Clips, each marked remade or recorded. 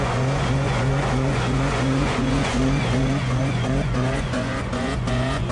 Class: remade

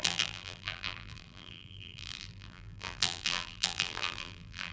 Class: remade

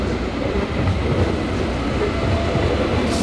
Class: recorded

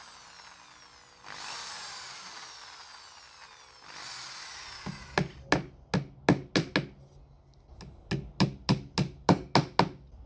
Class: recorded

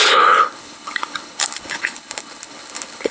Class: remade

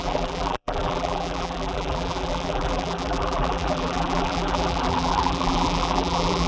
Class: remade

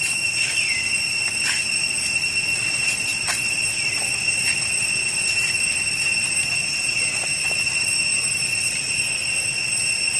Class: recorded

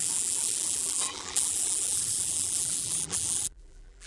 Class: remade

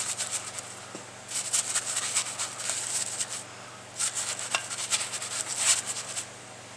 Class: recorded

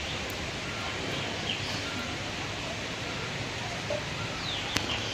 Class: recorded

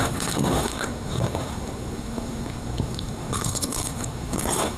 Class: remade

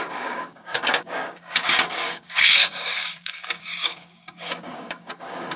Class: remade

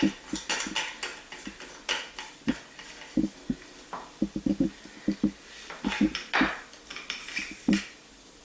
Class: recorded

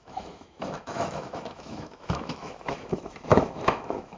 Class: remade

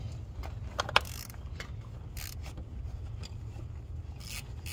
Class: recorded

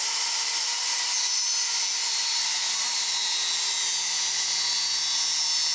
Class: recorded